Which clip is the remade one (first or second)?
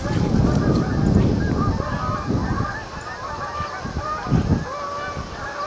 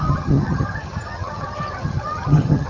second